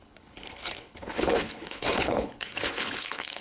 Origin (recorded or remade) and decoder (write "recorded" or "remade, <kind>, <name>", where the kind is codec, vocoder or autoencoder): remade, codec, HILCodec